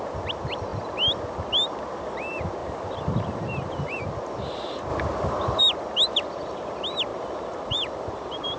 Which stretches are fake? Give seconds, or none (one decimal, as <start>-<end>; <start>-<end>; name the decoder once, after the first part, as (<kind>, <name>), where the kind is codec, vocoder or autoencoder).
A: 2.6-4.0 (vocoder, BigVGAN v2); 7.1-8.6